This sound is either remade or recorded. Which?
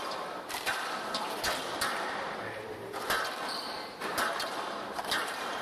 remade